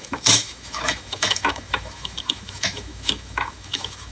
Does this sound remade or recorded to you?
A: remade